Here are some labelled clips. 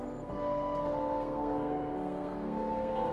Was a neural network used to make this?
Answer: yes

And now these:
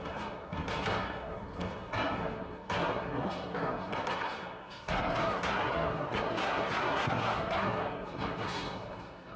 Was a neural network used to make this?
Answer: yes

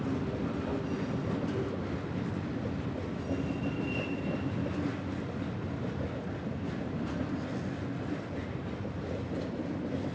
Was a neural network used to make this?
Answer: no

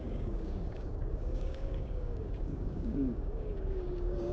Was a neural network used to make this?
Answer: yes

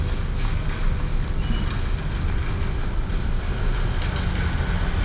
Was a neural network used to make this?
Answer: no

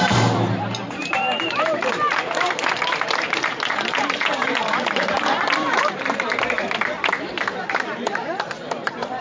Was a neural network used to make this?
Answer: yes